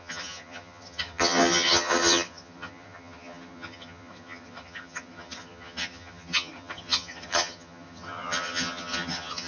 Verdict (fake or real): fake